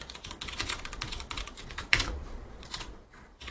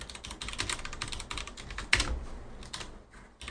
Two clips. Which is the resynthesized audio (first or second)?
first